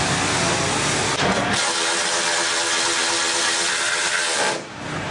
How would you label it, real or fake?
real